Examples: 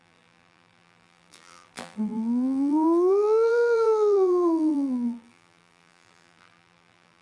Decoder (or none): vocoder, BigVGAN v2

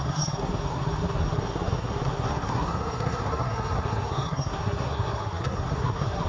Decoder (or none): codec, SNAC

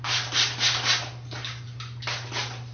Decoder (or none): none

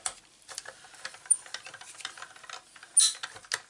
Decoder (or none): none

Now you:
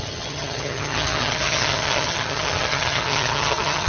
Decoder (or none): vocoder, HiFi-GAN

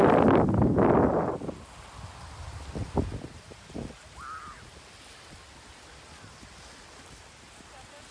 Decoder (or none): none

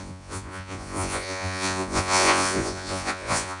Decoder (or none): vocoder, Vocos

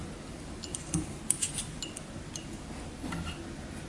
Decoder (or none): none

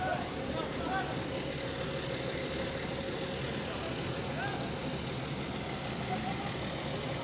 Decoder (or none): none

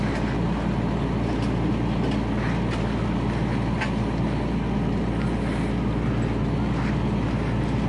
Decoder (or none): none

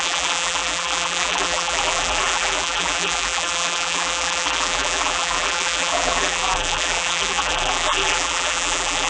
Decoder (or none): vocoder, BigVGAN v2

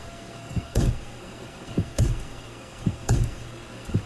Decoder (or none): codec, SNAC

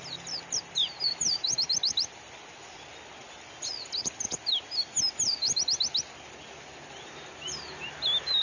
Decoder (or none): none